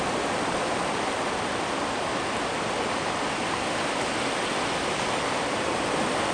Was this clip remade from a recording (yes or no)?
no